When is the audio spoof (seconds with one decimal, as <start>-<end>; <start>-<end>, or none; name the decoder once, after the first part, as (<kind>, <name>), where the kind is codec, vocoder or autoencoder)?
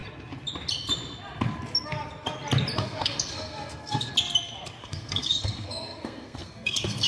2.8-4.1 (codec, SNAC); 4.8-7.1